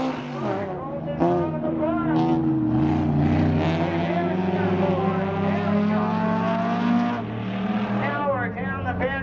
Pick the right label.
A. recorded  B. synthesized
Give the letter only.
A